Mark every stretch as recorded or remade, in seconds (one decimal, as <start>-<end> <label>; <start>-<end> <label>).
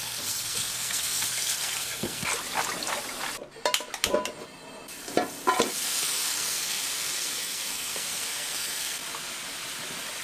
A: 0.0-2.3 remade; 2.3-5.7 recorded; 5.7-9.0 remade; 9.0-10.2 recorded